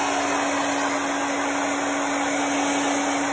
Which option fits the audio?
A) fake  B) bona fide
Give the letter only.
B